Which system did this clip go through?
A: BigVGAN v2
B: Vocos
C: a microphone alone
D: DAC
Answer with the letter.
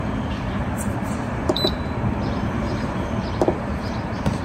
A